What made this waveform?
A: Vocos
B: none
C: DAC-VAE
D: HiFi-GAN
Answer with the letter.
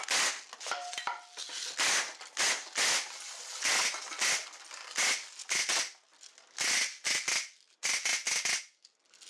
B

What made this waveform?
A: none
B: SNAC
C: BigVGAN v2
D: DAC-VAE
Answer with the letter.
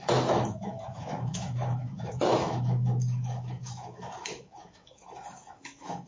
D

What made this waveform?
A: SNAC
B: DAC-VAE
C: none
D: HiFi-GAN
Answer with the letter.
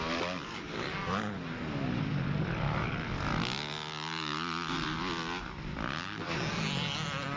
C